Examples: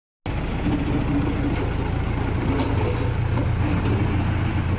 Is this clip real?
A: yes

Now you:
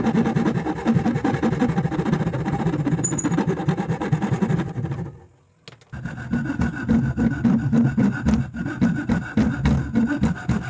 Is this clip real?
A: yes